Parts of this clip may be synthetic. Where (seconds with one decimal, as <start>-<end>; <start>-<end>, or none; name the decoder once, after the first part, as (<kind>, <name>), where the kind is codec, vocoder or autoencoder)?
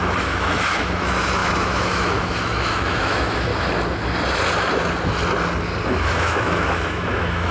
0.0-3.5 (autoencoder, DAC-VAE); 5.9-7.5